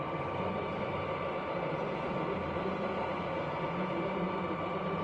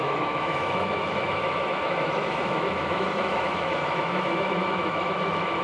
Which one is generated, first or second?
second